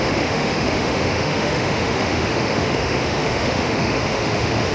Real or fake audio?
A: fake